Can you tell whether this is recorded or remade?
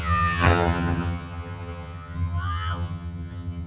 remade